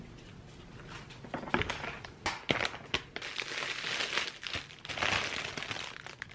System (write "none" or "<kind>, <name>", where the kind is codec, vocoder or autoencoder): none